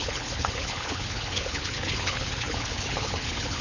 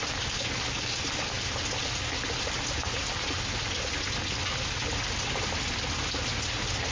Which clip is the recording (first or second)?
second